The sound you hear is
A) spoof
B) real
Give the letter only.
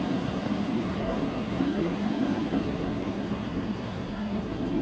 A